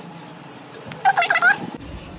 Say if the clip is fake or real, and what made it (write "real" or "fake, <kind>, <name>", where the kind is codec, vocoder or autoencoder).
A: real